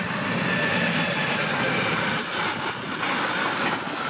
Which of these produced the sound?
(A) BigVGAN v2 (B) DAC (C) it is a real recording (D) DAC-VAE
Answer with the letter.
C